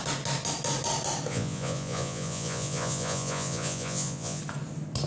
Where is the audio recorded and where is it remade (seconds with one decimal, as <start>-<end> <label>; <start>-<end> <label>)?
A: 0.0-1.3 recorded; 1.3-4.4 remade; 4.4-5.1 recorded